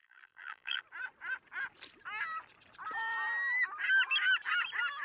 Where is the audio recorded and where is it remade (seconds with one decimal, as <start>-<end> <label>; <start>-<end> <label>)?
0.0-0.8 remade; 0.8-5.0 recorded